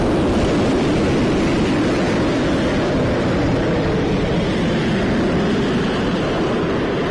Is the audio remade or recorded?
recorded